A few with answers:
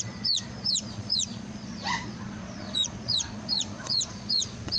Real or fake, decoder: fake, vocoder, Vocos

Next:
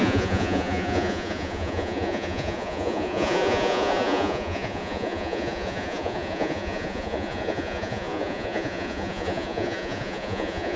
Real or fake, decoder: fake, vocoder, Vocos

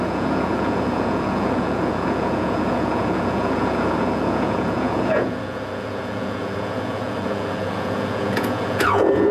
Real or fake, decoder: fake, vocoder, Vocos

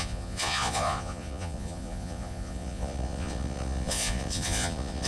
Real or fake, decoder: fake, vocoder, Vocos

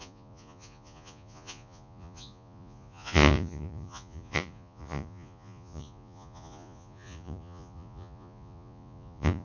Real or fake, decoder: fake, vocoder, Vocos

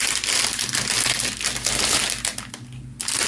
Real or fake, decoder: real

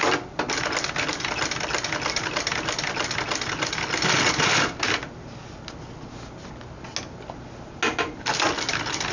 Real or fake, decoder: real